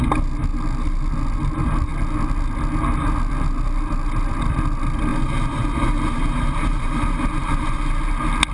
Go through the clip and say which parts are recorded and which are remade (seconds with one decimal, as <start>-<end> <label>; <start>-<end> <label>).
0.0-5.1 recorded; 5.1-7.9 remade; 7.9-8.5 recorded